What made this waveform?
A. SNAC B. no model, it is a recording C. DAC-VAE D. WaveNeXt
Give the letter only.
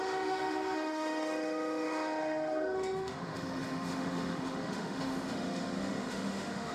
C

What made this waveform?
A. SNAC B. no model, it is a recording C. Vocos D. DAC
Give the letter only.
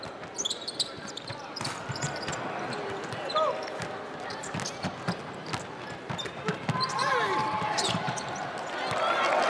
B